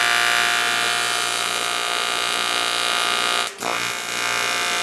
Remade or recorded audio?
recorded